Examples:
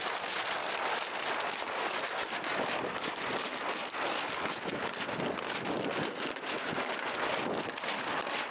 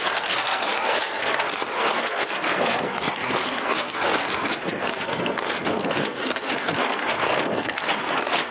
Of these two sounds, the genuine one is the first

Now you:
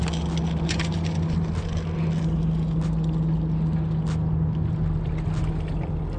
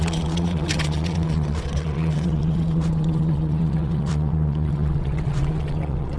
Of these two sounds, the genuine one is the first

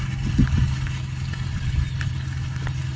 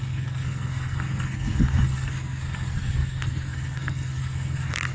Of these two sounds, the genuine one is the first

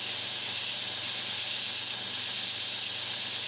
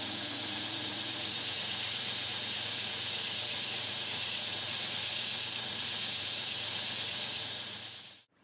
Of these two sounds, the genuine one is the first